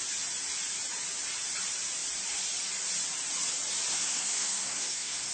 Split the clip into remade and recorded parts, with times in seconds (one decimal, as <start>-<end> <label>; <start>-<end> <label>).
0.0-3.9 recorded; 3.9-5.3 remade